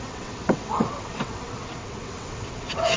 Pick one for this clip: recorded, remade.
remade